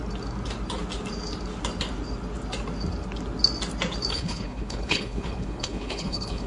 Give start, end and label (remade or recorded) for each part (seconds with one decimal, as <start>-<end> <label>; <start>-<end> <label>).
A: 0.0-4.1 recorded; 4.1-6.5 remade